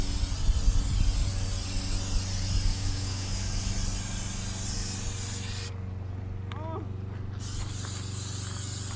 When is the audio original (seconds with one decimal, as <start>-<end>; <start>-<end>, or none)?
0.0-2.7; 3.7-9.0